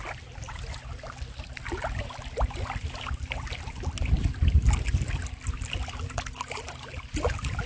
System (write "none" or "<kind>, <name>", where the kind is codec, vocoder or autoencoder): none